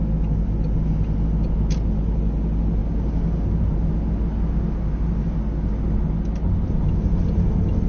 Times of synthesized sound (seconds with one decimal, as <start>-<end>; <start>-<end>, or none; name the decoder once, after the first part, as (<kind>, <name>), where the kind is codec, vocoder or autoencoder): none

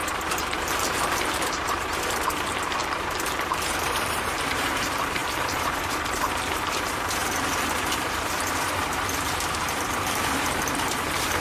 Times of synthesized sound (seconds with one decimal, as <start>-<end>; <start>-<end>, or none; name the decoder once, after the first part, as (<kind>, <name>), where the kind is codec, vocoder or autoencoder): 0.0-5.2 (vocoder, BigVGAN v2); 6.3-11.4

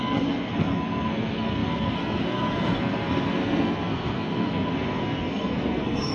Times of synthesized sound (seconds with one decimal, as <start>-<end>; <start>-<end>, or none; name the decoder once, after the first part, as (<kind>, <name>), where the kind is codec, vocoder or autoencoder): 0.0-6.1 (codec, SNAC)

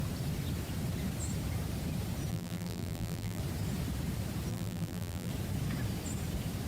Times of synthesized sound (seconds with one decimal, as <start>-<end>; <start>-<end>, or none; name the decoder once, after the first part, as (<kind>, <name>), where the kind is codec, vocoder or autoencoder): 2.3-3.4 (vocoder, BigVGAN v2); 4.5-5.3

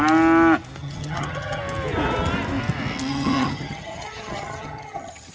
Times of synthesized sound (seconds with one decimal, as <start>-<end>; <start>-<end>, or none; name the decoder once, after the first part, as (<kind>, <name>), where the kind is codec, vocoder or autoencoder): 0.8-1.6 (vocoder, HiFi-GAN); 3.1-5.3

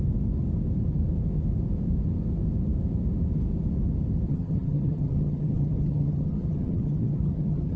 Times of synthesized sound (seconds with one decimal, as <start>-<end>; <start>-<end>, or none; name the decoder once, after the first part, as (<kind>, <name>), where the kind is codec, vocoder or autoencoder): 4.3-7.8 (vocoder, HiFi-GAN)

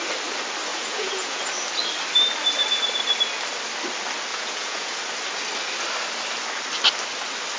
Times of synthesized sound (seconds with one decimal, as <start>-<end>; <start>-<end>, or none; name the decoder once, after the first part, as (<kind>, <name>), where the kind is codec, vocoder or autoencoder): 0.7-1.4 (vocoder, Vocos); 4.3-5.0

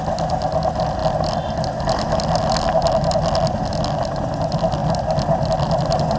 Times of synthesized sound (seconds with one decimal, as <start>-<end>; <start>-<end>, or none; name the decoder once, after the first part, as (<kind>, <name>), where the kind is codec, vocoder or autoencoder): none